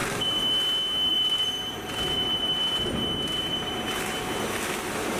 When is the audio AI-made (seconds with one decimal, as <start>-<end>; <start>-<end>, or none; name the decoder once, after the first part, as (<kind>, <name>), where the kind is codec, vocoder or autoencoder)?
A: 0.0-0.5 (vocoder, BigVGAN v2); 1.1-4.2